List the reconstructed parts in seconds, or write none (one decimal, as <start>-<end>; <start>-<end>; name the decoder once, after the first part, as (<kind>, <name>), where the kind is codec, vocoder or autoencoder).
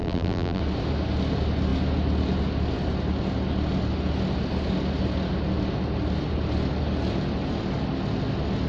0.0-0.6 (vocoder, BigVGAN v2)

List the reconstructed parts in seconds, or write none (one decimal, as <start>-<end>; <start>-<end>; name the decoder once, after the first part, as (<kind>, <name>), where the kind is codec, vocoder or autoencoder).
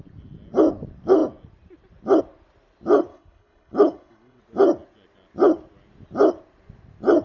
3.1-4.4 (codec, HILCodec)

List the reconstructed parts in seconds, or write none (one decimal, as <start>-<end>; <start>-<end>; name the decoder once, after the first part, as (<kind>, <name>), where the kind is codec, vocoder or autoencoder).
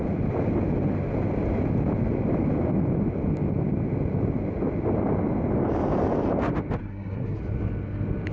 6.8-7.4 (codec, SNAC)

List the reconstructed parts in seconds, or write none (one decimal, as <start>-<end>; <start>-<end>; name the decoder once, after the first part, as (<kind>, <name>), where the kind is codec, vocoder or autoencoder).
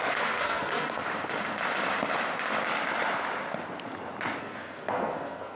0.0-1.0 (codec, SNAC); 4.4-5.6